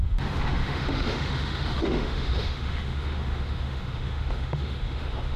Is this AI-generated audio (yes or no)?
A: yes